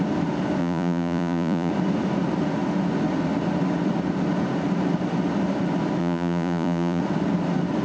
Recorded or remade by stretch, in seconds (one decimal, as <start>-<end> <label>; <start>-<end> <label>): 0.0-0.6 recorded; 0.6-1.7 remade; 1.7-6.0 recorded; 6.0-7.0 remade; 7.0-7.8 recorded